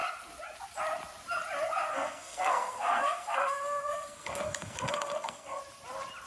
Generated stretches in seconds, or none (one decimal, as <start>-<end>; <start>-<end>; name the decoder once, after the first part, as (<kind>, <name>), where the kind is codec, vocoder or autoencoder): 1.9-5.6 (codec, SNAC)